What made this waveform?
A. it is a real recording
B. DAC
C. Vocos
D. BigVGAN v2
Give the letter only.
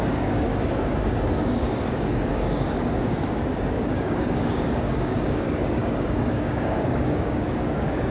B